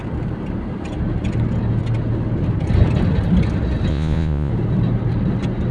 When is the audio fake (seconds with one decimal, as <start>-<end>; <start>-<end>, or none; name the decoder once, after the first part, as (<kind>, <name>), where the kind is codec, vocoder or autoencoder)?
3.9-4.5 (vocoder, Vocos)